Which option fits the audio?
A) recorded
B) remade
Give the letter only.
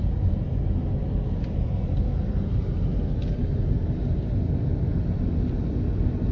A